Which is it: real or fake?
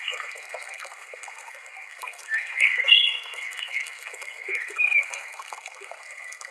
fake